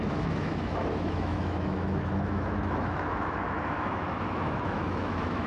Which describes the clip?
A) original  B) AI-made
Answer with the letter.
B